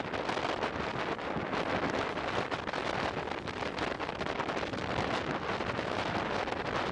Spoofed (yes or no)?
no